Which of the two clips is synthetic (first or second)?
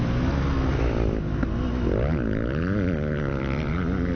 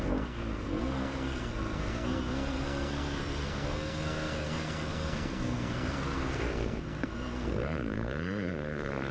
second